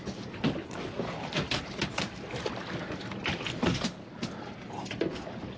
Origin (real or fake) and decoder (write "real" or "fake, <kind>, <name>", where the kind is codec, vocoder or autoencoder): real